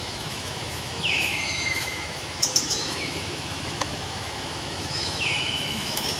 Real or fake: fake